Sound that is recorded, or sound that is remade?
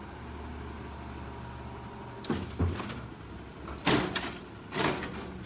recorded